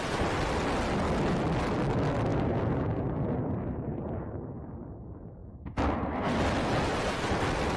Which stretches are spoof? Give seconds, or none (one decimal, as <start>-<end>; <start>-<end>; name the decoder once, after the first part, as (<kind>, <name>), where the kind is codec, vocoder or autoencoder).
none